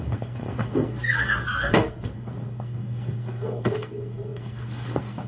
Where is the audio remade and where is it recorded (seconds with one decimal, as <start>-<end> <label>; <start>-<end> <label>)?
0.0-5.3 remade